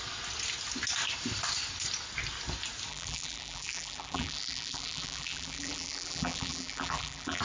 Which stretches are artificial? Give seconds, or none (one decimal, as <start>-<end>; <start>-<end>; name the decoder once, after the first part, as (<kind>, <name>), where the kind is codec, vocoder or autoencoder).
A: 2.9-7.4 (vocoder, BigVGAN v2)